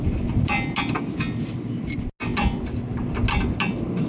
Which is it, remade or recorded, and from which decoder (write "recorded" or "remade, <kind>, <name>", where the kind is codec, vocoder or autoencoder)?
recorded